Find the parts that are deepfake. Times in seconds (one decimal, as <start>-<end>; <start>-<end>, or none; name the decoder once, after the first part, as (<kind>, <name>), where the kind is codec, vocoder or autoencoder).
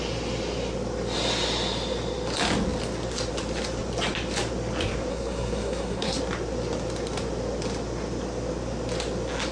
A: 5.1-6.2 (codec, SNAC)